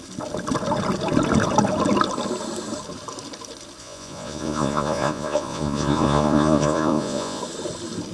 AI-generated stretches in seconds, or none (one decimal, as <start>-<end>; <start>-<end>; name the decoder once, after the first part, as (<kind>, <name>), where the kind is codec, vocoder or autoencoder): 3.8-7.4 (vocoder, Vocos)